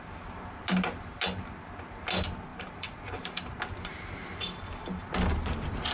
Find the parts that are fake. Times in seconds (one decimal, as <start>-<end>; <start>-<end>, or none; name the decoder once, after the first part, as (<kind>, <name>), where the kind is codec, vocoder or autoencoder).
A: 2.5-3.5 (vocoder, BigVGAN v2); 3.9-5.0